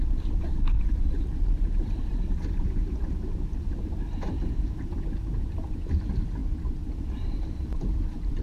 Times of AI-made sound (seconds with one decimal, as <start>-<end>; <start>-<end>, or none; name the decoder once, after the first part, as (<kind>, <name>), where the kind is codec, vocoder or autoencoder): 0.0-6.4 (vocoder, BigVGAN v2); 7.0-8.4